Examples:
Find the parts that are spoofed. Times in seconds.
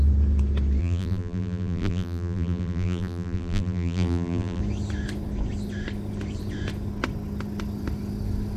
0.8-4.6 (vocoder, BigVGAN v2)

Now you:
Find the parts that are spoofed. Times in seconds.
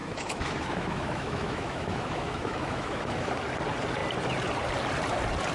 0.0-3.3 (autoencoder, DAC-VAE)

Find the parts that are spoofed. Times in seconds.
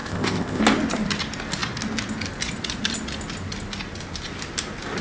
0.0-0.6 (codec, ZipCodec)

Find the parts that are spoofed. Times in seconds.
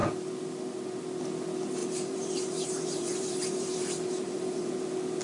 1.8-4.7 (vocoder, BigVGAN v2)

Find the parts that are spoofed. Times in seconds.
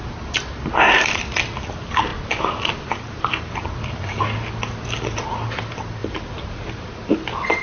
none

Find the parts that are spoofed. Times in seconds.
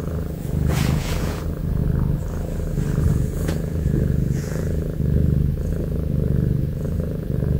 0.0-1.8 (vocoder, Vocos); 3.1-7.6